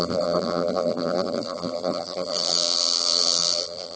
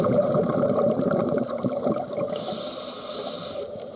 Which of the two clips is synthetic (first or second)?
first